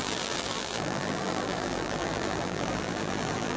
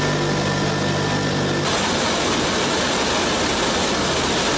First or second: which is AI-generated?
first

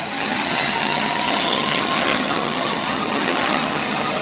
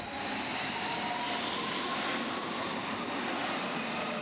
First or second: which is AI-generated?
first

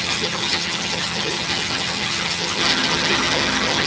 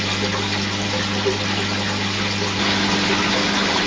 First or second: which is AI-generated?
first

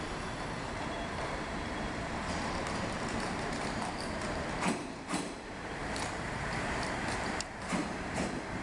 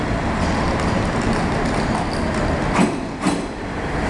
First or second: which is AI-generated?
first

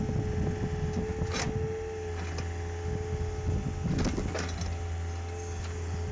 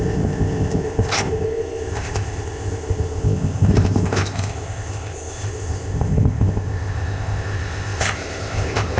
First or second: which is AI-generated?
second